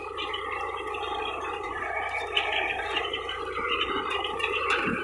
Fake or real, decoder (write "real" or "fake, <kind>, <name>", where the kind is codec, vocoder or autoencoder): fake, vocoder, BigVGAN v2